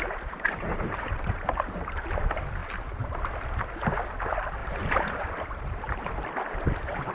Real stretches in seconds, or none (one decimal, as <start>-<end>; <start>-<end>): 2.2-4.6; 6.1-7.1